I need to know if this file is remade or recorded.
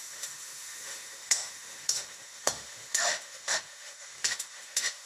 remade